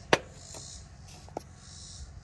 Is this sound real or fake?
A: real